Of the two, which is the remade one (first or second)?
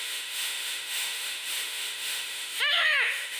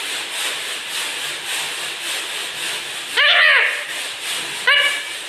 first